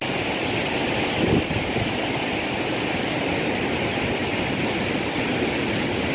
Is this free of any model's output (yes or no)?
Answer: yes